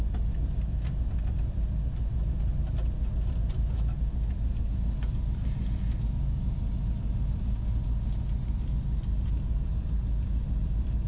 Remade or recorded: recorded